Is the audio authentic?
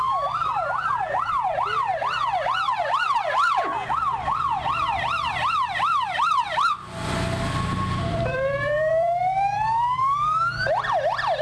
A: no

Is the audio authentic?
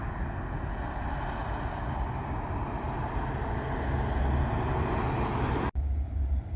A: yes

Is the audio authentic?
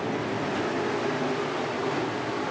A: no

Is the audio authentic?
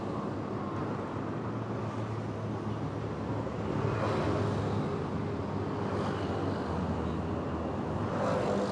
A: yes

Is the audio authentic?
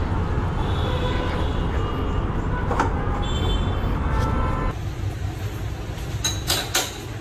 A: yes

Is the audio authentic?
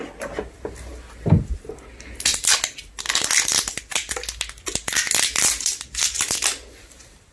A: yes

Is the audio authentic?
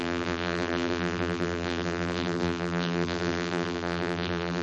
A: no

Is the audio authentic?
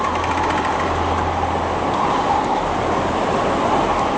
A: yes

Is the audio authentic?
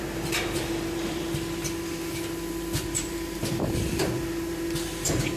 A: no